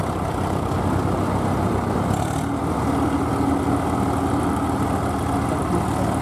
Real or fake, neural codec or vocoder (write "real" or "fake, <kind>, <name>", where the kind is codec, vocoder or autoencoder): real